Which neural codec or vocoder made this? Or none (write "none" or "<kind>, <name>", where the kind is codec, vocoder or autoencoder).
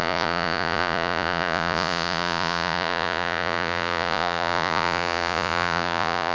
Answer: vocoder, Vocos